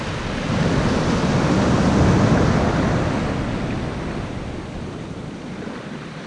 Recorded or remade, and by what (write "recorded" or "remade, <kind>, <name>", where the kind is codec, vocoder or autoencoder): recorded